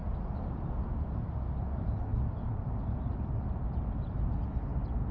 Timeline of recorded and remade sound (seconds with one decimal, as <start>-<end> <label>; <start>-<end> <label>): 0.0-5.1 recorded